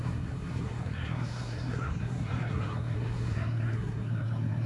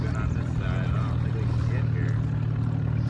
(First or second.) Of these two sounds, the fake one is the first